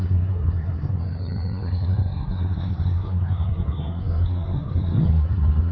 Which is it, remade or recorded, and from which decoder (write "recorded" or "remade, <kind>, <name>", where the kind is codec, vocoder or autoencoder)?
remade, codec, SNAC